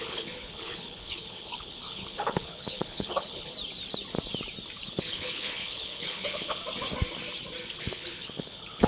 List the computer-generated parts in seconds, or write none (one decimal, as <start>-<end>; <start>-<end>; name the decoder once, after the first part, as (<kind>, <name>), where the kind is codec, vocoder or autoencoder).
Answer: 0.0-3.5 (codec, HILCodec); 4.9-6.6; 7.8-8.9